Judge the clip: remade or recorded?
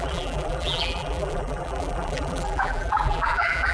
remade